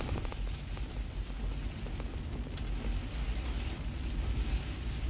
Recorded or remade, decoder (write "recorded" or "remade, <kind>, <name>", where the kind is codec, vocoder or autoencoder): recorded